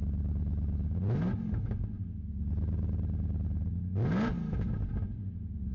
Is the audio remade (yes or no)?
no